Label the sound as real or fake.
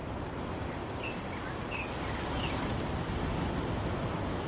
real